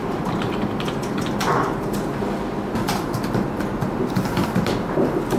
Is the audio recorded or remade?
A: recorded